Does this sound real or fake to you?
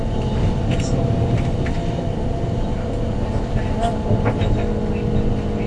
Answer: real